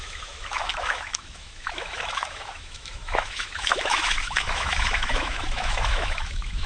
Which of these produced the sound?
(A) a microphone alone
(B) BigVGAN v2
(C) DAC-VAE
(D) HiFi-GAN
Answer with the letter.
C